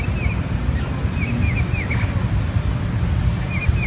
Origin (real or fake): real